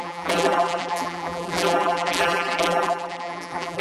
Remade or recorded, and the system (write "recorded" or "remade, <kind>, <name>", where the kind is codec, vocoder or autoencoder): remade, vocoder, BigVGAN v2